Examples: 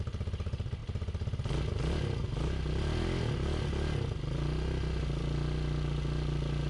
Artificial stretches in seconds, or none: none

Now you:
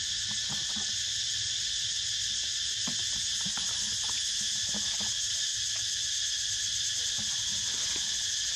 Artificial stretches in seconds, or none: 5.5-7.3 (vocoder, BigVGAN v2)

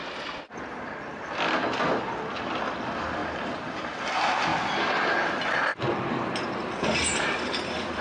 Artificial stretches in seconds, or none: 3.2-3.9 (vocoder, BigVGAN v2)

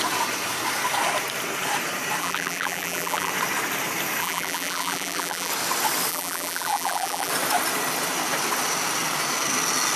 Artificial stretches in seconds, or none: 2.2-3.3 (vocoder, BigVGAN v2); 4.2-5.5; 6.1-7.3

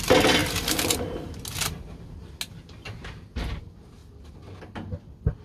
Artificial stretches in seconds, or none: none

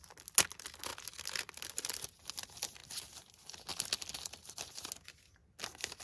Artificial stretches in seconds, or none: 3.7-4.3 (vocoder, BigVGAN v2)

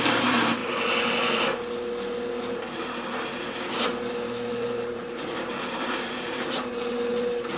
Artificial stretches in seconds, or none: 0.0-0.6 (vocoder, BigVGAN v2); 4.5-7.6